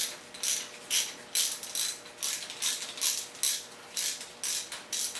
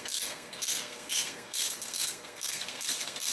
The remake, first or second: second